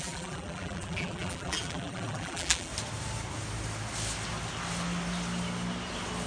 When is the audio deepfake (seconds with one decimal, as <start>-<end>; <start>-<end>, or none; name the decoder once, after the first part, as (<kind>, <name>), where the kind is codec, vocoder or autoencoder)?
0.0-2.7 (vocoder, BigVGAN v2)